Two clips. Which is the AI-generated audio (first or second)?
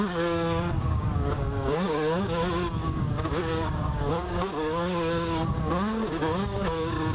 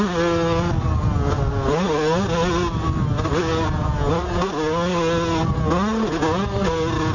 first